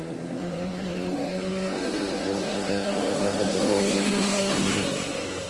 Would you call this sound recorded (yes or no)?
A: no